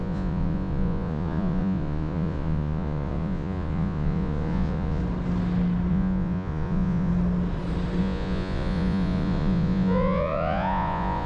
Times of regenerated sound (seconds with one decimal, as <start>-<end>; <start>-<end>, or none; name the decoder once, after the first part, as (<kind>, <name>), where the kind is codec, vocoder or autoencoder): 0.0-5.0 (vocoder, Vocos); 5.9-7.1; 8.0-11.3